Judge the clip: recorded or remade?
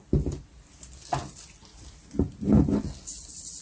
recorded